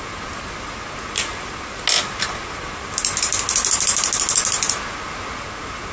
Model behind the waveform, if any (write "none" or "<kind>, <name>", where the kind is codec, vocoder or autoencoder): none